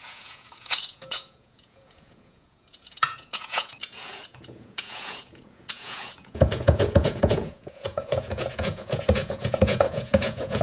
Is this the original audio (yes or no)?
no